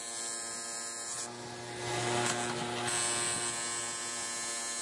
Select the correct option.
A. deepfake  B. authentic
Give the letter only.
B